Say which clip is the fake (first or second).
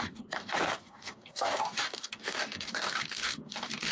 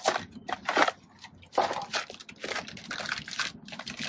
first